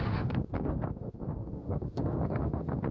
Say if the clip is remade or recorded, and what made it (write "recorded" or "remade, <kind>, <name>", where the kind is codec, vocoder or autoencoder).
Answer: remade, autoencoder, DAC-VAE